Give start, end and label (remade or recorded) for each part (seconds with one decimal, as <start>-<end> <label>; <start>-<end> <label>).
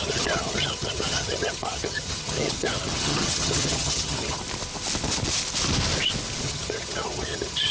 0.0-4.4 remade; 4.4-6.4 recorded; 6.4-7.7 remade